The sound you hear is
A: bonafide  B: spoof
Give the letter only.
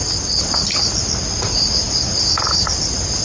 A